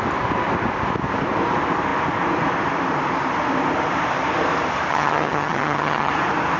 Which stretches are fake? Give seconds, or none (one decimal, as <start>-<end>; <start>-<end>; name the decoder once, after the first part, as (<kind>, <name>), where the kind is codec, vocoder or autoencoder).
4.9-6.1 (vocoder, HiFi-GAN)